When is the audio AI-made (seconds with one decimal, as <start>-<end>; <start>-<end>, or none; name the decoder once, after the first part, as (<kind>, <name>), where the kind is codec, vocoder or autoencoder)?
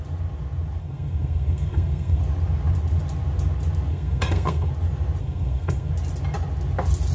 0.8-2.2 (codec, SNAC); 3.9-4.7; 5.2-5.9